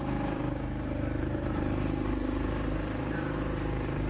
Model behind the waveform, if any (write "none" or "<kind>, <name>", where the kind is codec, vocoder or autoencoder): vocoder, BigVGAN v2